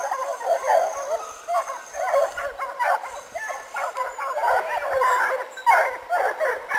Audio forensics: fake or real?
real